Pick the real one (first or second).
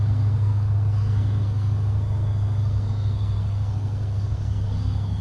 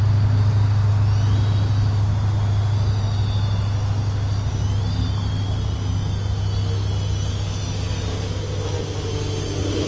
second